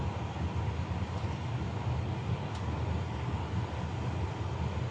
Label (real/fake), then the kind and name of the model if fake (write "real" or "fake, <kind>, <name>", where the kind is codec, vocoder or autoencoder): real